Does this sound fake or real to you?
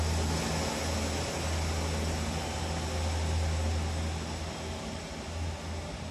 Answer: real